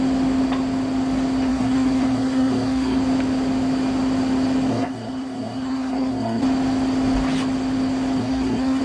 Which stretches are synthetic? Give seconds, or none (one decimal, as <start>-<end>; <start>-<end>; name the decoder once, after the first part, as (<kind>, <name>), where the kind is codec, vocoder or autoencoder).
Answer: 1.5-3.0 (codec, SNAC); 4.7-6.4; 8.2-8.8